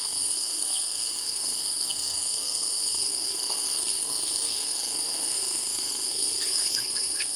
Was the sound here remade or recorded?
remade